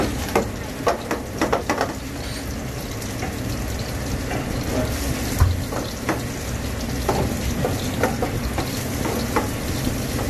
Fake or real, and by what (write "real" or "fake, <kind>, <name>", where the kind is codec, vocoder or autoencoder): real